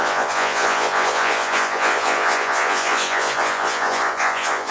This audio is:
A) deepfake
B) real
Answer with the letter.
A